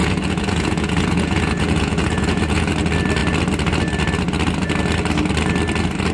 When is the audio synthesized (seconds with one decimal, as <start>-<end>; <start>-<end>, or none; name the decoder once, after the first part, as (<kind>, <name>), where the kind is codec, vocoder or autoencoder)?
0.0-2.7 (vocoder, Vocos)